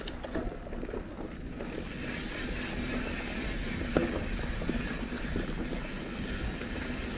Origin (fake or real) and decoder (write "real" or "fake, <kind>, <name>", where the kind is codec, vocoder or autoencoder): real